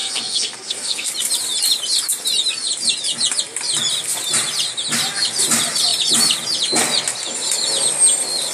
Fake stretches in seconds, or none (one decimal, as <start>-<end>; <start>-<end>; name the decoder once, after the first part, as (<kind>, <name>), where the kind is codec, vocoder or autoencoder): 0.0-1.1 (codec, SNAC)